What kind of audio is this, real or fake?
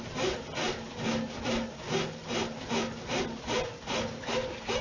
real